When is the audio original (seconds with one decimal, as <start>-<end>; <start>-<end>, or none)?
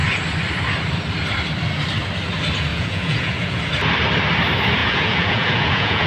0.0-2.7; 3.6-4.8